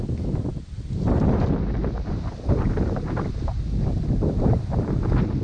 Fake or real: real